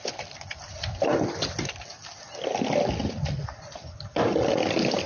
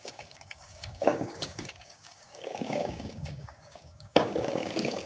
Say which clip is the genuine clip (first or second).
first